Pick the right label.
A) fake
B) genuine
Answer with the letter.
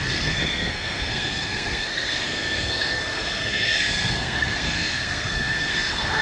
A